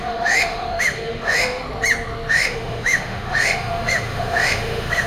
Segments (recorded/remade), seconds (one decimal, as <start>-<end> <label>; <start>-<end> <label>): 0.0-1.6 remade; 1.6-2.3 recorded; 2.3-5.1 remade